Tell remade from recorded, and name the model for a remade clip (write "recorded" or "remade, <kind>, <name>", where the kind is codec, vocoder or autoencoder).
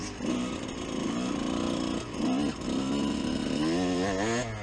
recorded